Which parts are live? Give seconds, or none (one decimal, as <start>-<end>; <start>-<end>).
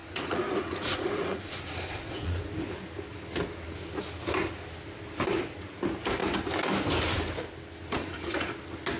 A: 2.4-8.0; 8.5-9.0